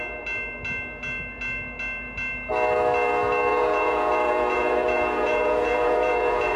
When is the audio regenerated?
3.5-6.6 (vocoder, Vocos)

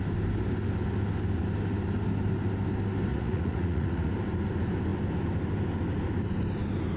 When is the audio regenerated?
3.1-4.1 (vocoder, Vocos)

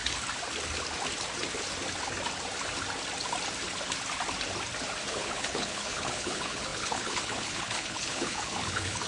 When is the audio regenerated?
5.1-9.1 (codec, HILCodec)

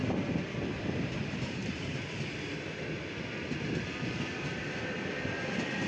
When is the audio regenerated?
none

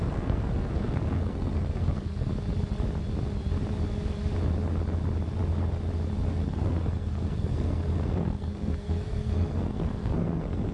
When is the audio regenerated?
0.0-2.3 (codec, SNAC); 6.3-10.7

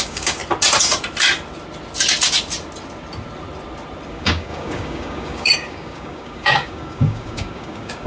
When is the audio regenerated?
0.0-0.4 (codec, DAC); 4.1-8.1

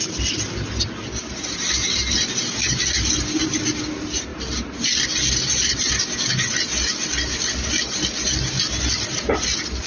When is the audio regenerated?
none